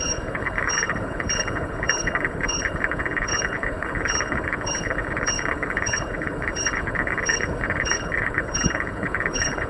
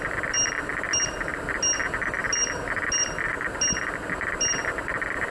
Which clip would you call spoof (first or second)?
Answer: first